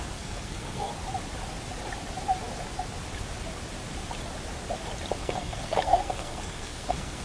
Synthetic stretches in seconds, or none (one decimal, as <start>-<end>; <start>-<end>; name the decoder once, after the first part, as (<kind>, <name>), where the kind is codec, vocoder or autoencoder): 0.0-0.9 (codec, SNAC); 5.2-7.2